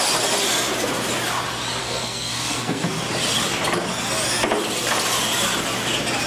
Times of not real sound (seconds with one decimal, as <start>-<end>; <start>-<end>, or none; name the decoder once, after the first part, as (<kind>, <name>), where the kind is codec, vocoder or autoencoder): 1.8-2.9 (codec, SNAC)